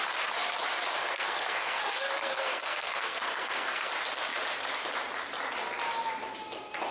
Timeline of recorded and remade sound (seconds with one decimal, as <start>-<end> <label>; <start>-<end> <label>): 0.0-1.0 recorded; 1.0-1.8 remade; 1.8-2.2 recorded; 2.2-3.9 remade; 3.9-6.9 recorded